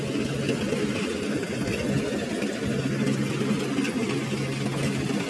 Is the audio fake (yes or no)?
no